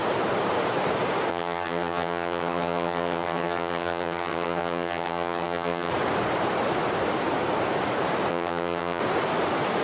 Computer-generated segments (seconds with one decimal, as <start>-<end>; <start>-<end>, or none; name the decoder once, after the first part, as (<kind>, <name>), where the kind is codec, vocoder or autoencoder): 1.3-5.9 (vocoder, HiFi-GAN); 8.3-9.0